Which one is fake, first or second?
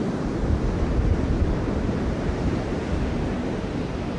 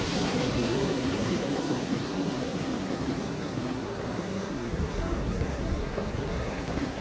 second